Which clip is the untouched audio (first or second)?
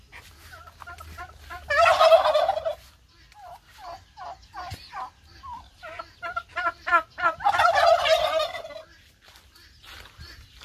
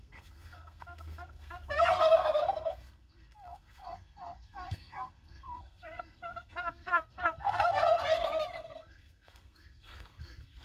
first